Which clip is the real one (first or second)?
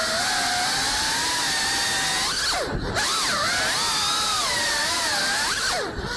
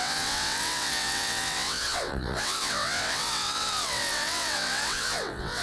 first